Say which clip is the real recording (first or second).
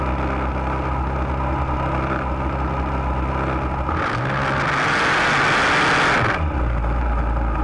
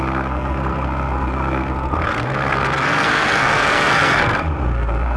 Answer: first